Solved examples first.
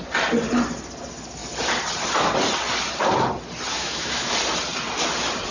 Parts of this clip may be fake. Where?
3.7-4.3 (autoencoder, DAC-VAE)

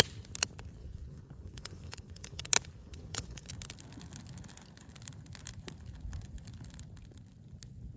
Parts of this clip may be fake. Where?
0.8-2.4 (vocoder, Vocos); 2.8-3.5

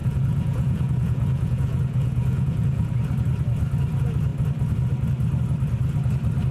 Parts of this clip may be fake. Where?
0.0-2.9 (vocoder, Vocos)